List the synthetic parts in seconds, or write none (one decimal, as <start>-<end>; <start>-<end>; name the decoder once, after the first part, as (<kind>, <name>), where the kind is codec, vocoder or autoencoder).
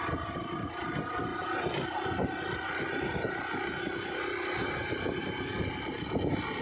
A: none